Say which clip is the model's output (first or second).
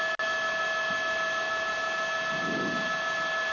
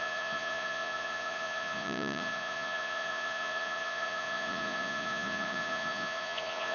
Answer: second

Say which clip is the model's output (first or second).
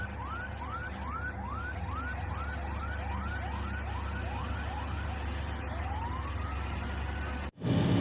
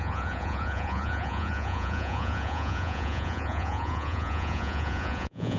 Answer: second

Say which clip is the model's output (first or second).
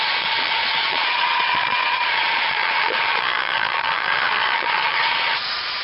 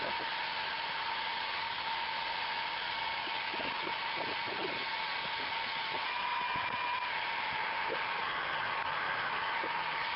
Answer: first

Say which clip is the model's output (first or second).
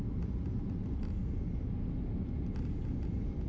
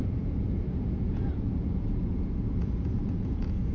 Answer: second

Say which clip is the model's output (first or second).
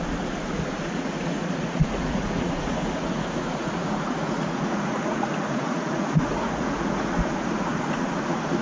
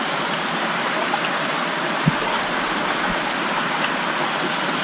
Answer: first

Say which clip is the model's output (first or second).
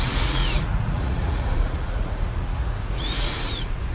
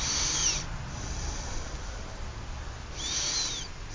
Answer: first